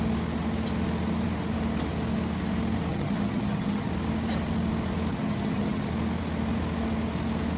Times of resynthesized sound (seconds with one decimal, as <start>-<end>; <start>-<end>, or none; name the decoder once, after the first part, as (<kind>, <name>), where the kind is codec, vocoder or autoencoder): 2.9-3.9 (vocoder, HiFi-GAN); 5.1-5.9